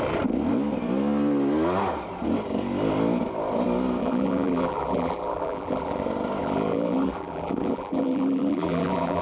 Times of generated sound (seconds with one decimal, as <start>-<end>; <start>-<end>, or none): 4.0-6.0; 6.4-9.2